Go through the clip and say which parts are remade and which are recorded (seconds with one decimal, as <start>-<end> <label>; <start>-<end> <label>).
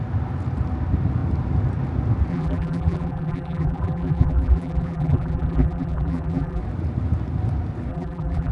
0.0-2.3 recorded; 2.3-6.6 remade; 6.6-7.9 recorded; 7.9-8.5 remade